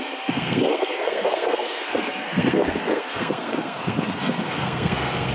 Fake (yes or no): yes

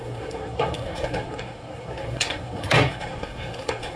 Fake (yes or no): yes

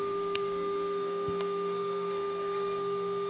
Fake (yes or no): yes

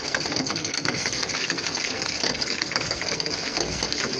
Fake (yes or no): yes